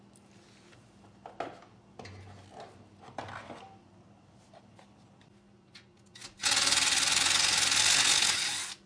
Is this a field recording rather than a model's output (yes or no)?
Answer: yes